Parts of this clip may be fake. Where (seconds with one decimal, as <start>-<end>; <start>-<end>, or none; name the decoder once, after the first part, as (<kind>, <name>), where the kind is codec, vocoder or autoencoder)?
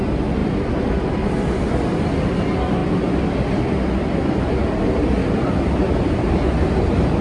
0.4-1.3 (vocoder, BigVGAN v2); 5.2-5.9